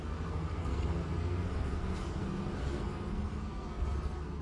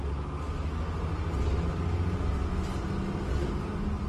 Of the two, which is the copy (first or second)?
first